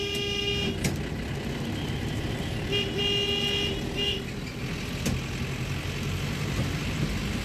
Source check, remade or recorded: recorded